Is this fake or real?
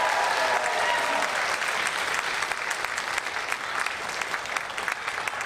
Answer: real